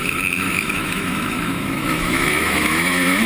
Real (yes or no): no